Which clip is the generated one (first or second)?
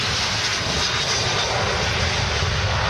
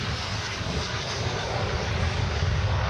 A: second